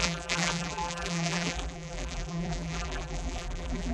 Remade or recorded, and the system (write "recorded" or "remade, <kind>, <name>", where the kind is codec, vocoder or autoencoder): remade, vocoder, BigVGAN v2